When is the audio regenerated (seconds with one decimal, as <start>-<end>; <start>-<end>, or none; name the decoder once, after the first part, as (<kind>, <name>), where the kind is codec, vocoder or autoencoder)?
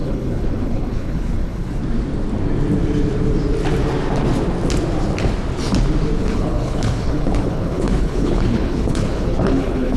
0.0-1.8 (codec, HILCodec); 6.2-10.0